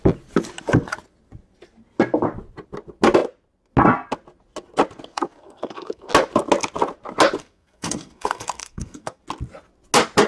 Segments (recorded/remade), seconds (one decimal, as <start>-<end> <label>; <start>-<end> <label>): 0.0-5.1 recorded; 5.1-6.1 remade; 6.1-7.4 recorded; 7.4-9.2 remade; 9.2-10.3 recorded

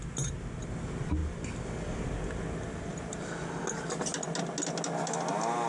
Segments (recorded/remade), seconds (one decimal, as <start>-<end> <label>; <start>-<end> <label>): 0.0-5.7 recorded

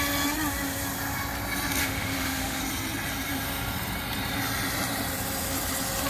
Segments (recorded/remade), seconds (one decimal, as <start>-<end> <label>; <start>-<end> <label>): 0.0-1.8 recorded; 1.8-2.6 remade; 2.6-6.1 recorded

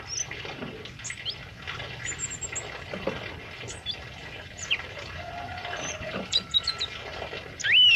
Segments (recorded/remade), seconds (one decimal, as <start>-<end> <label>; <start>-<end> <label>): 0.0-4.2 recorded; 4.2-6.7 remade; 6.7-8.0 recorded